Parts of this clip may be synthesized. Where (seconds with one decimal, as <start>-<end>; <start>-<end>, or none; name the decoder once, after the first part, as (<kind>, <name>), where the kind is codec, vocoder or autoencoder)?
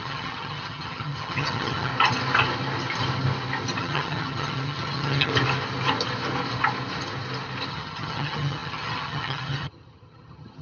0.0-1.9 (vocoder, HiFi-GAN); 3.8-5.3; 7.7-10.6